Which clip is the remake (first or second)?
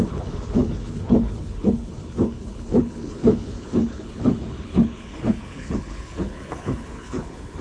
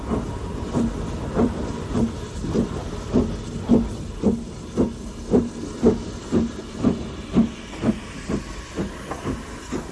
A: first